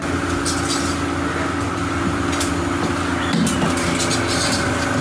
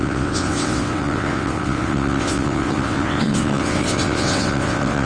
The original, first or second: first